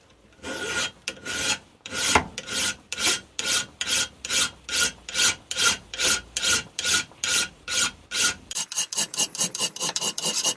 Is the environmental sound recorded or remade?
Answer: remade